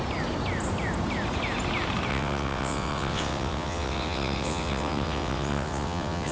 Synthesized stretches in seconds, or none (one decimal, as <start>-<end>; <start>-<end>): 2.1-6.3